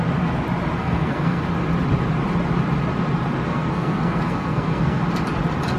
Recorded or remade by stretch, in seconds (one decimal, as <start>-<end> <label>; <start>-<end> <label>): 0.0-0.8 recorded; 0.8-1.4 remade; 1.4-3.5 recorded; 3.5-5.0 remade; 5.0-5.8 recorded